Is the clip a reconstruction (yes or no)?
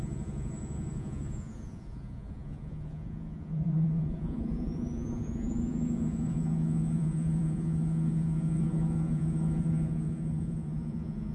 yes